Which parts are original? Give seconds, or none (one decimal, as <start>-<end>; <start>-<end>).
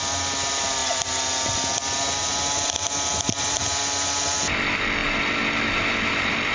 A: 0.0-6.5